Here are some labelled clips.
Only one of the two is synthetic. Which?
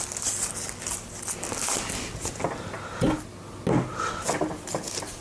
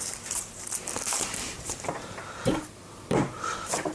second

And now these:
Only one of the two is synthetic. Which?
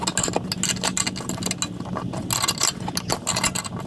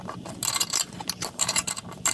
second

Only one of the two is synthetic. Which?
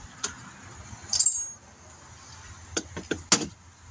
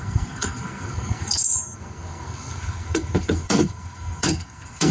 second